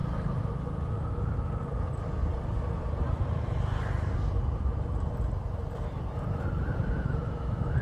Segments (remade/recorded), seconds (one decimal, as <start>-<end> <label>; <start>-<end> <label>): 0.0-0.9 remade; 0.9-2.2 recorded; 2.2-3.8 remade; 3.8-6.7 recorded; 6.7-7.8 remade